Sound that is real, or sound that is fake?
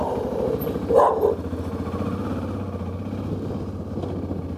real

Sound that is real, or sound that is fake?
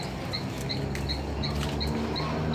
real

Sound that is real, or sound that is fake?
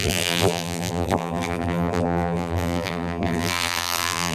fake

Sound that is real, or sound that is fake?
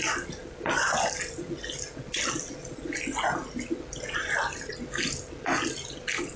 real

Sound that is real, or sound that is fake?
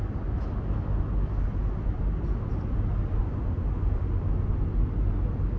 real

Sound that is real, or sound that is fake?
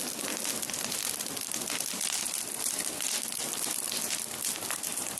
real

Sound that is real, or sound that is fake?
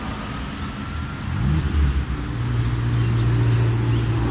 real